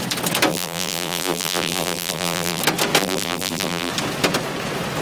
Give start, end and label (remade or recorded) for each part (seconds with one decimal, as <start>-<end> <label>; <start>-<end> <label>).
0.0-0.5 recorded; 0.5-2.6 remade; 2.6-3.0 recorded; 3.0-3.9 remade; 3.9-5.0 recorded